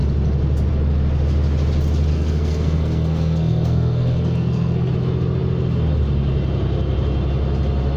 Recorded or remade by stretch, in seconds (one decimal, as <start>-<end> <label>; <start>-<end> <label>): 0.0-2.1 recorded; 2.1-4.9 remade; 4.9-8.0 recorded